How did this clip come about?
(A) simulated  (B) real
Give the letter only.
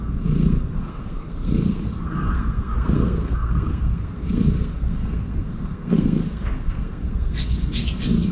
A